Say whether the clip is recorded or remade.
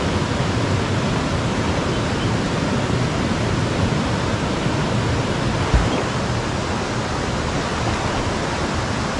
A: recorded